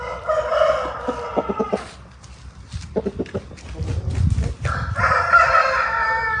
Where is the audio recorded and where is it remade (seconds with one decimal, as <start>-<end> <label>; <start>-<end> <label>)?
0.0-6.4 recorded